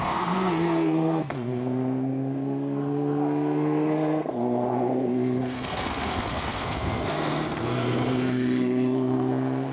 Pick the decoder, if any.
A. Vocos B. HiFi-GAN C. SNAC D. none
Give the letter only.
C